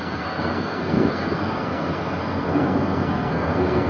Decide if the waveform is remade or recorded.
remade